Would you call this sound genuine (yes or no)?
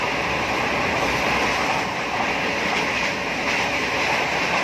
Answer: yes